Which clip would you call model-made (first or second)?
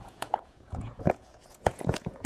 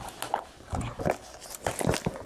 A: first